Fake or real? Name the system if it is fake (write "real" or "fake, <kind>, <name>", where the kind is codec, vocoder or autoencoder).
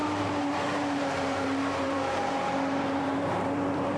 fake, vocoder, BigVGAN v2